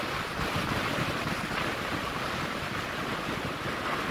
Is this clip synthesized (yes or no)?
no